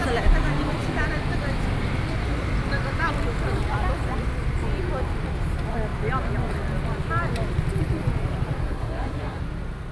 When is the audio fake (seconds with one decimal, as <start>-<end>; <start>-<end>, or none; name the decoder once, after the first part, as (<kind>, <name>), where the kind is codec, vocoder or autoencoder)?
8.6-9.4 (codec, SNAC)